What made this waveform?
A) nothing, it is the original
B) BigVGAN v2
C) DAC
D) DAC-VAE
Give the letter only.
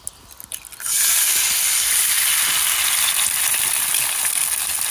A